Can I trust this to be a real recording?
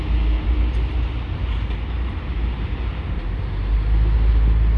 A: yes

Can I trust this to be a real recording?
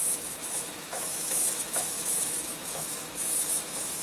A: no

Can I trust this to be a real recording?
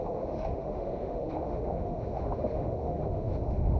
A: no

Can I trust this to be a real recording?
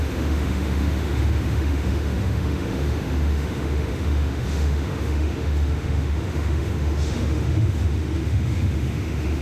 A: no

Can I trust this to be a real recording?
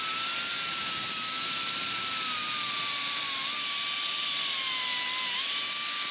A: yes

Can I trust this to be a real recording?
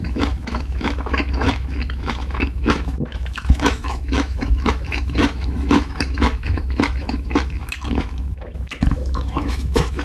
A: no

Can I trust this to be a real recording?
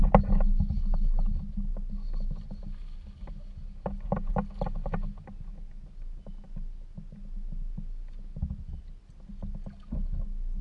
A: yes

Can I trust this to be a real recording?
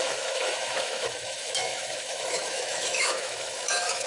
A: no